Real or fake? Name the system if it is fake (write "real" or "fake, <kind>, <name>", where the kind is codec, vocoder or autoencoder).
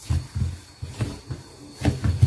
real